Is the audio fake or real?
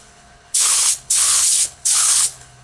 fake